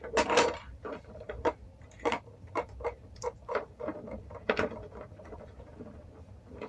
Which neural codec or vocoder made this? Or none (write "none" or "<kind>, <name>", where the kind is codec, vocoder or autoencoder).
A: vocoder, BigVGAN v2